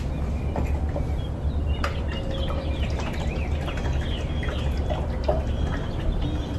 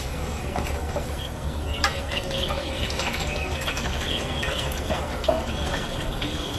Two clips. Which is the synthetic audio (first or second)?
second